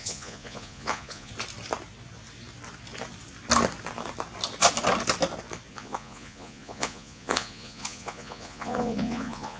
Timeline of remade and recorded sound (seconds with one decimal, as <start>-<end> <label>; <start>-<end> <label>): 0.0-1.3 remade; 1.3-5.7 recorded; 5.7-9.6 remade